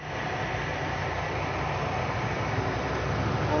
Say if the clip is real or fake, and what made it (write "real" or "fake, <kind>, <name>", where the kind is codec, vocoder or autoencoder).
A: real